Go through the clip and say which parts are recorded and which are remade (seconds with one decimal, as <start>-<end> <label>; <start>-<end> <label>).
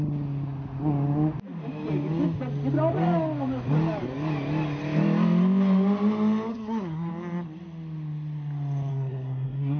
0.0-6.5 recorded; 6.5-7.1 remade; 7.1-8.9 recorded; 8.9-9.8 remade